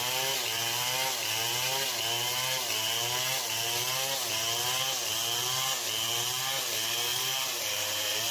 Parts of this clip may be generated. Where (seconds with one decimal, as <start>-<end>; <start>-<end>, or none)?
7.1-8.3